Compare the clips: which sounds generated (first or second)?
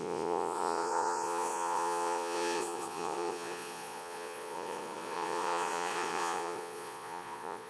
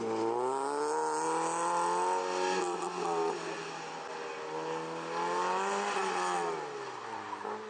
first